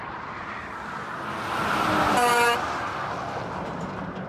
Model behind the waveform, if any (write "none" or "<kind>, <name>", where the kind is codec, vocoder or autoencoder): none